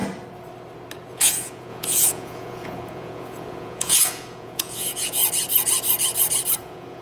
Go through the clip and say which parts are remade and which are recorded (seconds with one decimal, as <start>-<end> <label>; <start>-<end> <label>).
0.0-1.1 recorded; 1.1-5.2 remade; 5.2-6.6 recorded; 6.6-7.0 remade